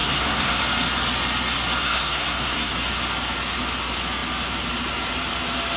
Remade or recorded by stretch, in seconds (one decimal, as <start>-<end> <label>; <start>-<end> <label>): 0.0-0.6 remade; 0.6-1.8 recorded; 1.8-2.7 remade; 2.7-5.8 recorded